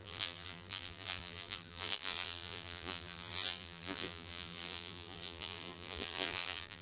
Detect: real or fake fake